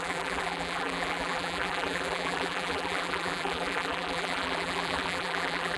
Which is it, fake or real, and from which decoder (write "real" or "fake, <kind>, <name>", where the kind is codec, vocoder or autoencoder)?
fake, vocoder, BigVGAN v2